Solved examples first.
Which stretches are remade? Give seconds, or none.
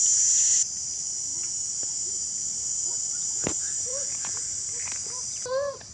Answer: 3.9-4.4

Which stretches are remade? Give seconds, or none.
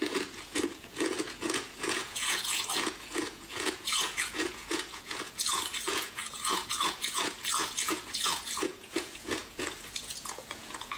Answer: 0.0-11.0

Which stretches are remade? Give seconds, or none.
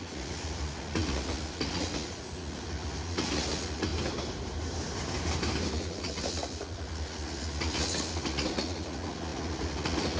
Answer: 0.0-3.9; 5.7-10.2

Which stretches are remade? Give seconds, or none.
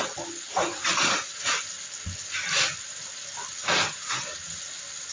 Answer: 0.5-1.5; 3.6-4.6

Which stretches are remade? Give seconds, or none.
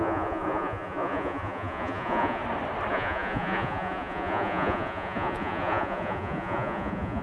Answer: 0.0-2.4; 2.9-7.2